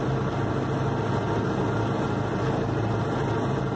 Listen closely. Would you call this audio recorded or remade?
recorded